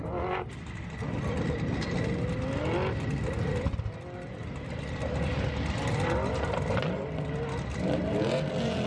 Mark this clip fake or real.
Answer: real